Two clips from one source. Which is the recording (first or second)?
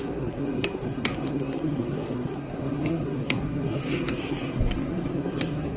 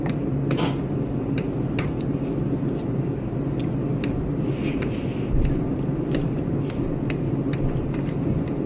second